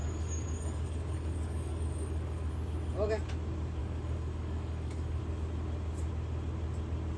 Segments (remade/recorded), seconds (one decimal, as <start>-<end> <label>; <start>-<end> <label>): 0.0-2.5 remade; 2.5-3.8 recorded; 3.8-5.2 remade; 5.2-7.2 recorded